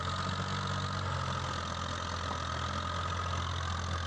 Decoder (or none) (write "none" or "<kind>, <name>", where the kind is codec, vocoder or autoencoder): none